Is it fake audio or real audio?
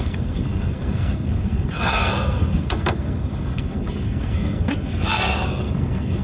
fake